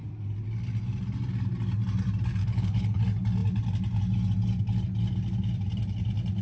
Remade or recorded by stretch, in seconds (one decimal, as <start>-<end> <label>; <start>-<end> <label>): 0.0-2.4 recorded; 2.4-3.0 remade; 3.0-6.4 recorded